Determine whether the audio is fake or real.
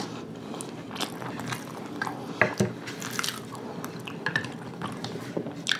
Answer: real